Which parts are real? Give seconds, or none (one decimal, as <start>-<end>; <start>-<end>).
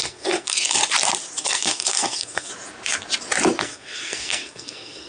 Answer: 0.8-1.4; 2.5-3.6